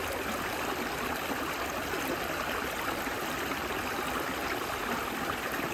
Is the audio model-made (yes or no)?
no